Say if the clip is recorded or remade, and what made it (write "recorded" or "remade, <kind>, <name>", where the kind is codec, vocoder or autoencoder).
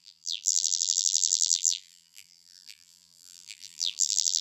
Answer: remade, vocoder, BigVGAN v2